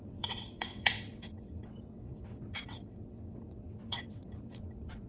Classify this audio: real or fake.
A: fake